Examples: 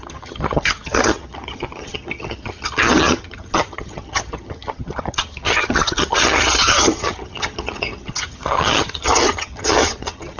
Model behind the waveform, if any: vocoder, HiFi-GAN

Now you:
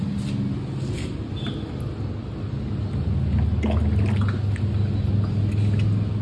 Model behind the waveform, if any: none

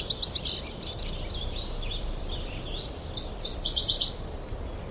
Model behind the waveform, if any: vocoder, BigVGAN v2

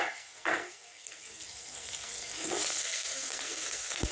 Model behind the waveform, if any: codec, SNAC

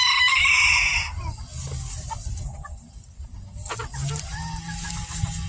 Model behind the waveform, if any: none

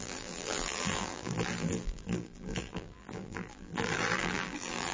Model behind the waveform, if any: vocoder, BigVGAN v2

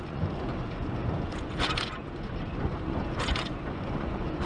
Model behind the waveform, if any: vocoder, Vocos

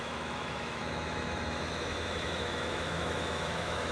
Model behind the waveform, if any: autoencoder, DAC-VAE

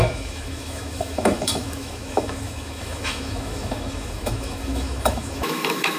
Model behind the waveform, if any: autoencoder, DAC-VAE